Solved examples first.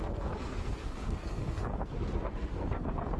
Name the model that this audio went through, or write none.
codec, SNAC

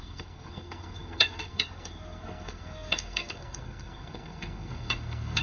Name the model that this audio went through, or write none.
codec, SNAC